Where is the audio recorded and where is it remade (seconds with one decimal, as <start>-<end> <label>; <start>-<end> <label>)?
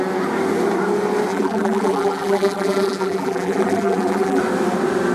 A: 0.0-1.3 recorded; 1.3-4.4 remade; 4.4-5.1 recorded